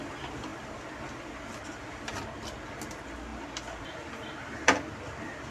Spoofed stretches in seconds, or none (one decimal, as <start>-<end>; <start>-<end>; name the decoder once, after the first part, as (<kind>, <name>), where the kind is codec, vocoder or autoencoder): none